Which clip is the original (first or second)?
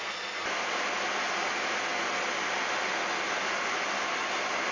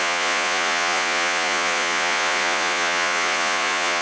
first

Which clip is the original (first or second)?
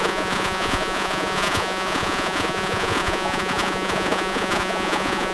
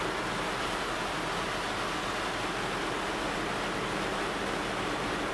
second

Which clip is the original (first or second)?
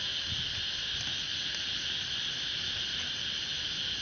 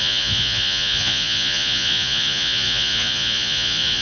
first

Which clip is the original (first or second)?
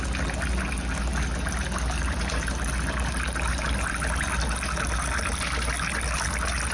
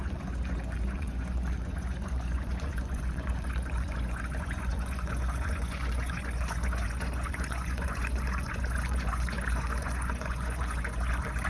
first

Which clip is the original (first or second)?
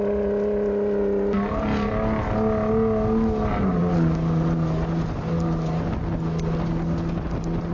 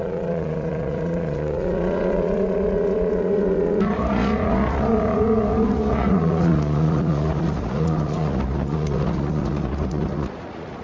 first